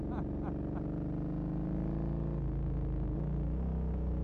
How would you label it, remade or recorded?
recorded